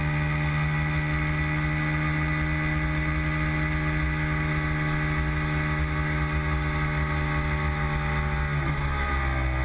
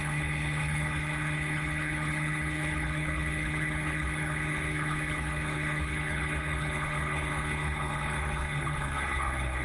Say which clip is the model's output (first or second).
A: second